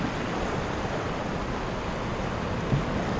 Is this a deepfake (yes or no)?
no